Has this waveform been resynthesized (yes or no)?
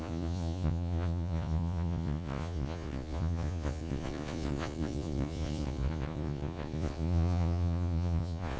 yes